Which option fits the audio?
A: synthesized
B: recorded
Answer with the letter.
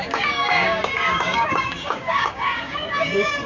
A